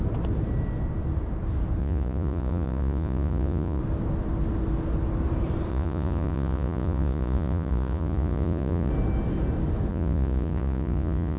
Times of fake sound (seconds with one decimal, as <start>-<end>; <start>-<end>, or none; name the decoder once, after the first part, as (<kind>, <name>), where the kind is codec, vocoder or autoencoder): 1.8-3.8 (vocoder, Vocos); 5.7-8.9; 9.9-11.4